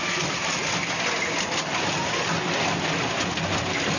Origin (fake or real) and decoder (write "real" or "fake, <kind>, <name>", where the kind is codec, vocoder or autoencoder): real